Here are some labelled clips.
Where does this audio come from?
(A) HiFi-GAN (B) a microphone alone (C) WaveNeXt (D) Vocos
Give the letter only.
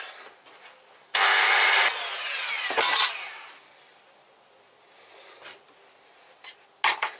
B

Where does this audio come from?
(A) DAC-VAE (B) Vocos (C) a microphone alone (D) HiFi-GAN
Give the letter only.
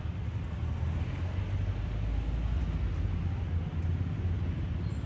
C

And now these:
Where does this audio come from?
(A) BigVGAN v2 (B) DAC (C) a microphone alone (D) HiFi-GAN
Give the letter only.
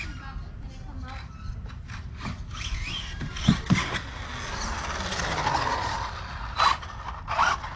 C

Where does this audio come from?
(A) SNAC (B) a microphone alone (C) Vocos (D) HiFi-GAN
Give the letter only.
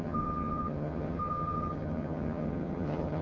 D